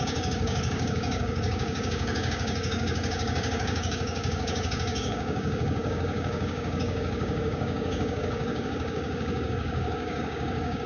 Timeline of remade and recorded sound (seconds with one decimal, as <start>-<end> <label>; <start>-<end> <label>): 0.0-10.9 remade